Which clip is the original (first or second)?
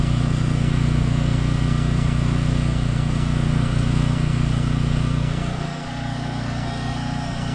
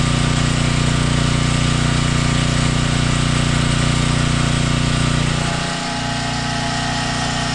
second